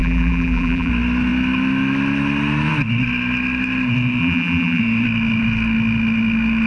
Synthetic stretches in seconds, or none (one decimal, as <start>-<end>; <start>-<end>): 0.0-0.9; 4.2-4.8